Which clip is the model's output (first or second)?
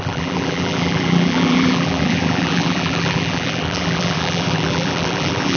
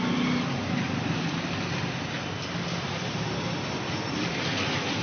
first